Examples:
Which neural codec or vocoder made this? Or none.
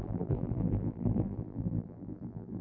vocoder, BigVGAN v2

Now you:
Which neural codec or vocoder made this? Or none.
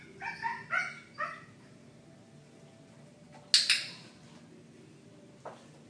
none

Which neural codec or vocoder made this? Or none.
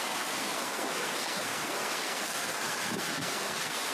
codec, SNAC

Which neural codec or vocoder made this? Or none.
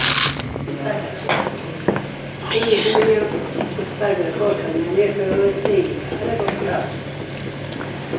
none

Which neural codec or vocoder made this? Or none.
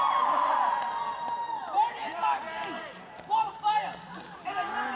none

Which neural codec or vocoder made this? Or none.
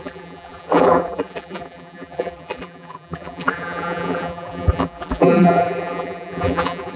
vocoder, BigVGAN v2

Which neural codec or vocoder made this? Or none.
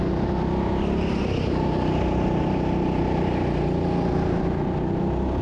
none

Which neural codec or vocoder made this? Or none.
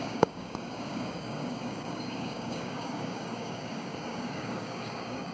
codec, DAC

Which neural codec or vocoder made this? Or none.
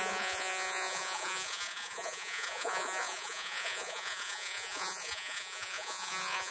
vocoder, Vocos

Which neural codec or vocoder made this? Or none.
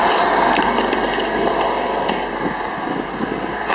none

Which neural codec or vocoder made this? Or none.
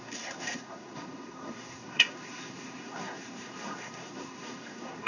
codec, SNAC